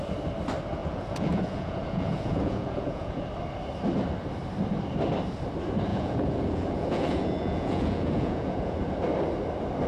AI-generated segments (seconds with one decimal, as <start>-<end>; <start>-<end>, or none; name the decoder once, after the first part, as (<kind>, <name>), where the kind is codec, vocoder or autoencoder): 0.8-3.2 (vocoder, Vocos); 5.9-8.8